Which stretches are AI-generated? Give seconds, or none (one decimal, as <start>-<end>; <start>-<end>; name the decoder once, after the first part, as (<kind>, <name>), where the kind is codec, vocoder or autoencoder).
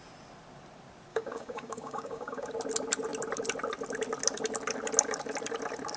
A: 1.1-2.5 (codec, DAC)